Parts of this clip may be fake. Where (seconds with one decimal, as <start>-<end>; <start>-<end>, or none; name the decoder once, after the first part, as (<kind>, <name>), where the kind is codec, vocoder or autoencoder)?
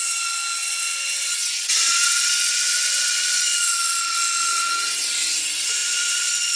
0.0-6.6 (vocoder, WaveNeXt)